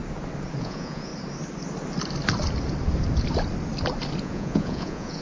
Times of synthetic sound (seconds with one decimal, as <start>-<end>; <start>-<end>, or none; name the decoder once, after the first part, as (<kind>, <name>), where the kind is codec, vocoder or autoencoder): 0.6-1.1 (vocoder, Vocos); 4.2-5.2